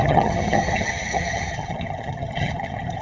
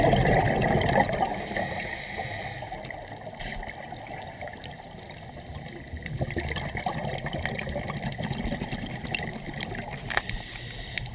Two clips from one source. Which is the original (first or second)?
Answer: second